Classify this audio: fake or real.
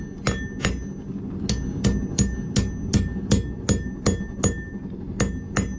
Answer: real